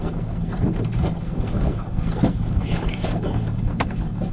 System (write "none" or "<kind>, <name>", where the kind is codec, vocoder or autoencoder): codec, SNAC